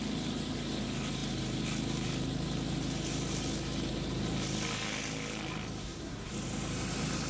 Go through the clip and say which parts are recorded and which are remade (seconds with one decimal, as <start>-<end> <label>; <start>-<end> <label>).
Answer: 0.0-5.8 recorded; 5.8-6.3 remade; 6.3-7.3 recorded